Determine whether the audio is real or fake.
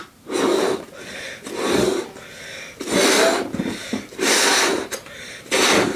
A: real